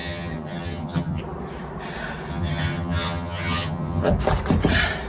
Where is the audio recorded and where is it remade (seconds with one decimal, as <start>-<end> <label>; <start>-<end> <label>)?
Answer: 0.0-1.2 remade; 1.2-2.3 recorded; 2.3-4.1 remade; 4.1-5.1 recorded

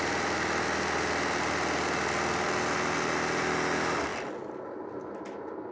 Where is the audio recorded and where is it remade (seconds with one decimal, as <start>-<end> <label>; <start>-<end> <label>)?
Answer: 0.0-5.7 recorded

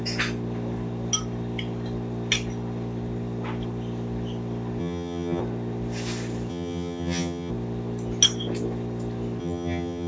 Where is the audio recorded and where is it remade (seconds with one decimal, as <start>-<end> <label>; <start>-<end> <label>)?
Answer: 0.0-4.8 recorded; 4.8-5.4 remade; 5.4-6.5 recorded; 6.5-7.5 remade; 7.5-9.4 recorded; 9.4-10.1 remade